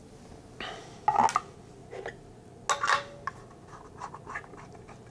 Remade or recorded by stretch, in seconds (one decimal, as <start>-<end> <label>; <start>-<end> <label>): 0.0-5.1 recorded